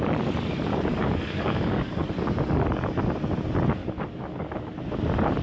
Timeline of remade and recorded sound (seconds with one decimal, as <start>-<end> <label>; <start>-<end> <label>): 0.0-0.7 recorded; 0.7-2.9 remade; 2.9-3.8 recorded; 3.8-4.5 remade; 4.5-5.4 recorded